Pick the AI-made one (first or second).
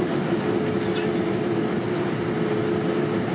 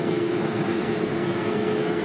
second